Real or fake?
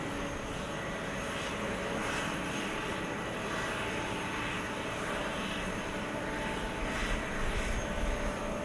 real